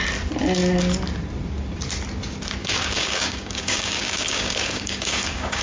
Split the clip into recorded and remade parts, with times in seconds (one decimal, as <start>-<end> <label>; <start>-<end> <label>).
0.0-2.6 recorded; 2.6-5.6 remade